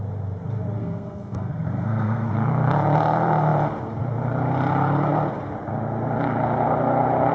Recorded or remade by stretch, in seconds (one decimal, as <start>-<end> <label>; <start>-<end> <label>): 0.0-0.8 recorded; 0.8-2.3 remade; 2.3-7.3 recorded